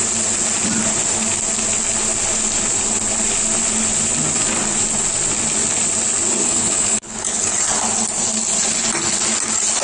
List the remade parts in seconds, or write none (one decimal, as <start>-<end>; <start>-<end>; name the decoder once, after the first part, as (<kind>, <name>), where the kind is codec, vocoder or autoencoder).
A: 6.4-7.5 (codec, HILCodec)